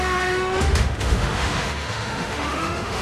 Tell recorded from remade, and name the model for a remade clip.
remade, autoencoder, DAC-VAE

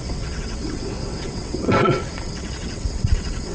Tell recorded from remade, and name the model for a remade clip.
remade, vocoder, WaveNeXt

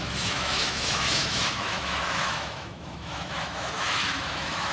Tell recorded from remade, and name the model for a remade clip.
remade, autoencoder, DAC-VAE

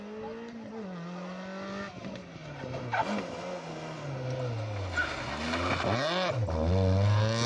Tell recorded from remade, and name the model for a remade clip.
recorded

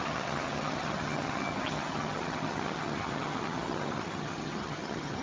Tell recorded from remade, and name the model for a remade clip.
remade, vocoder, HiFi-GAN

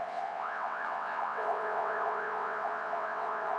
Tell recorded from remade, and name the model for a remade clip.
remade, vocoder, WaveNeXt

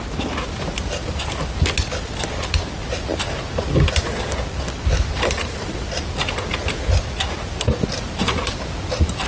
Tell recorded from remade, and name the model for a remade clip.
recorded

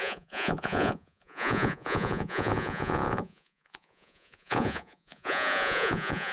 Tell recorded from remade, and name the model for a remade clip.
remade, vocoder, Vocos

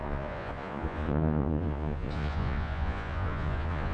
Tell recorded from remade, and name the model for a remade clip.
remade, vocoder, Vocos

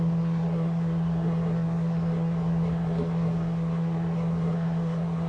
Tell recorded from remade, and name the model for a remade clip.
remade, codec, SNAC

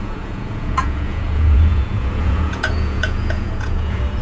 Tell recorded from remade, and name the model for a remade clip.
remade, vocoder, Vocos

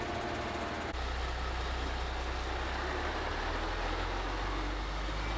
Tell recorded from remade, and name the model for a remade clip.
recorded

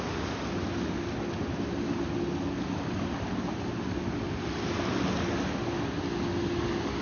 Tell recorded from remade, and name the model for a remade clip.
recorded